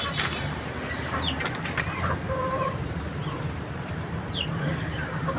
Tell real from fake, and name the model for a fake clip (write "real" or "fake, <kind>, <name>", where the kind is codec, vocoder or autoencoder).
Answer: fake, vocoder, BigVGAN v2